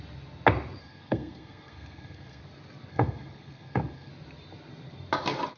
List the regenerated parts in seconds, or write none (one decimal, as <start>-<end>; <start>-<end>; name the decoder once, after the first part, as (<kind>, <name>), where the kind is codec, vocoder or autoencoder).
0.8-2.4 (codec, SNAC); 2.9-4.1